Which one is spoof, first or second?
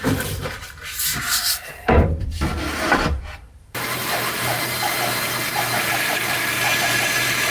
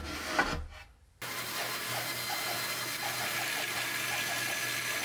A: first